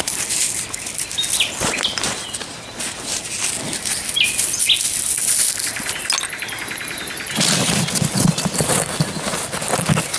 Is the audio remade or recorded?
recorded